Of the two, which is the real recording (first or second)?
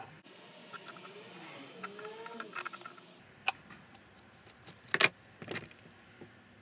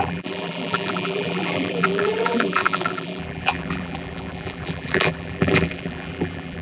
first